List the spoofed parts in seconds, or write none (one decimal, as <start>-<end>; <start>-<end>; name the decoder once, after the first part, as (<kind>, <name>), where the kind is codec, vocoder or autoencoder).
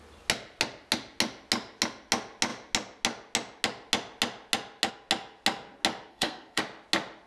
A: 6.1-6.6 (codec, SNAC)